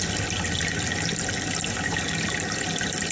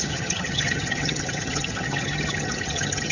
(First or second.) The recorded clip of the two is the first